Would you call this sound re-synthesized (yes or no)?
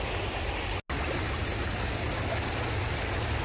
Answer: no